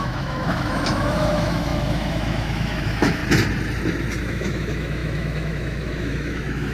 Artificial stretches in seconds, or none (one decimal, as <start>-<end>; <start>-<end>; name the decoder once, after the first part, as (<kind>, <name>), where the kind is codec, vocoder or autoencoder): 0.0-3.2 (autoencoder, DAC-VAE); 4.2-6.7